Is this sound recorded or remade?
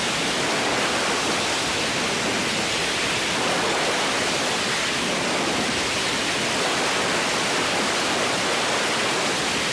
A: recorded